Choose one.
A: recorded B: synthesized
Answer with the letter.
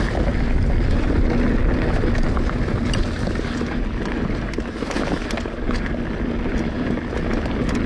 A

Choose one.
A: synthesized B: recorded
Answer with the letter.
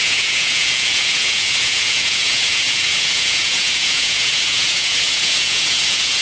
A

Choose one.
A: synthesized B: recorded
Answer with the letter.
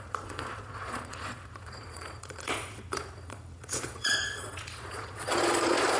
A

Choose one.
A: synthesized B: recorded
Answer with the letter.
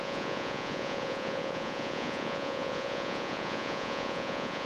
A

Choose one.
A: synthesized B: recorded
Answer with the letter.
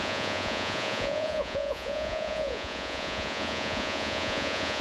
A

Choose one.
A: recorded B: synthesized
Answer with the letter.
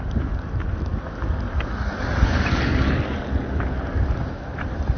A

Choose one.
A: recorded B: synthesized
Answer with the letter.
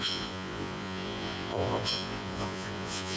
B